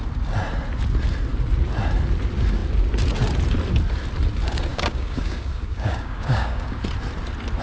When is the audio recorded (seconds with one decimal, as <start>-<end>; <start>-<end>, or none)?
0.0-4.7; 6.8-7.6